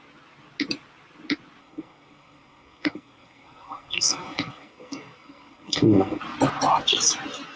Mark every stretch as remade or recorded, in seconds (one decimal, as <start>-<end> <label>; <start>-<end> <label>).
0.0-1.6 recorded; 1.6-6.2 remade; 6.2-7.6 recorded